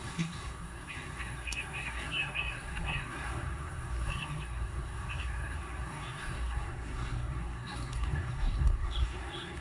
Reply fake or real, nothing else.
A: fake